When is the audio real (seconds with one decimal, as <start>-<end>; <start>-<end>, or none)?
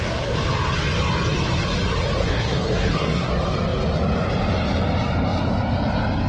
0.0-2.2; 3.3-6.3